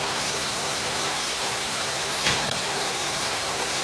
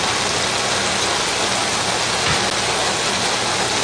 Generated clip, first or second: first